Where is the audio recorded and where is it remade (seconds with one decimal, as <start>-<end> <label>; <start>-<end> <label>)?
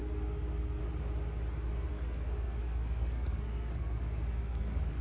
0.0-0.8 remade; 0.8-1.9 recorded; 1.9-5.0 remade